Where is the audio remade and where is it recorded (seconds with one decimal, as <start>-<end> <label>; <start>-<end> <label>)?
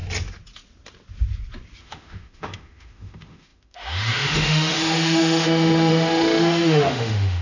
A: 0.0-1.8 recorded; 1.8-7.4 remade